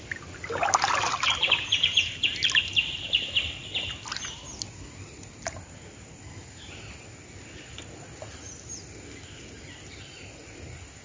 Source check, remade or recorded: recorded